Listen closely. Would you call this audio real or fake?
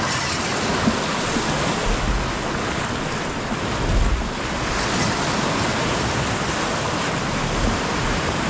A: real